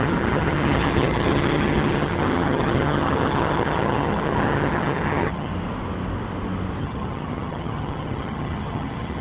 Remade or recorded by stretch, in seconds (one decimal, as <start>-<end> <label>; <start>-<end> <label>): 0.0-5.5 remade; 5.5-6.8 recorded; 6.8-9.2 remade